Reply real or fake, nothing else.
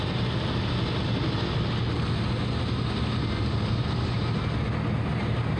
real